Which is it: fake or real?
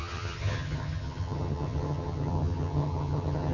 fake